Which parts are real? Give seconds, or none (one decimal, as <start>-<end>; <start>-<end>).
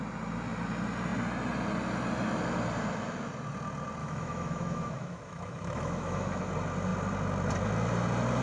0.0-4.0; 6.5-8.4